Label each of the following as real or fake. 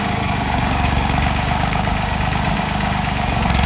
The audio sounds fake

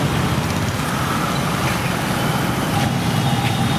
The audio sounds real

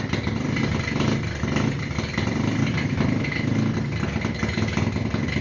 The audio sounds real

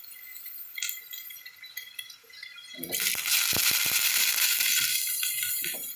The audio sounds real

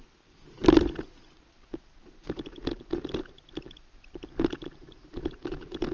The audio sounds real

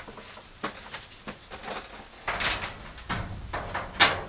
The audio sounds real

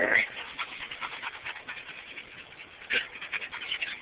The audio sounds real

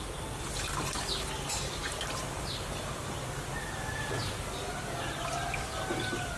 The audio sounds real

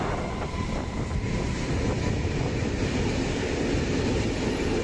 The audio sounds real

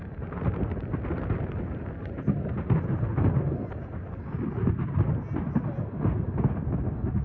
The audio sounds real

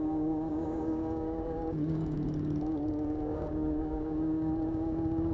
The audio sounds fake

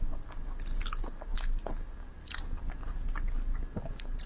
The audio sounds real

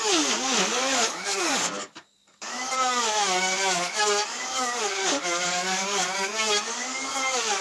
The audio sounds fake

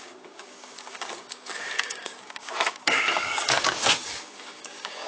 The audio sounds fake